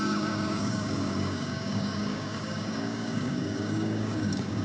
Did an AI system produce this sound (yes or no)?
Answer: yes